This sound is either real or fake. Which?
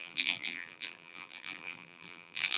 fake